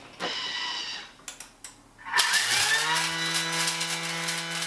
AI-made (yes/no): no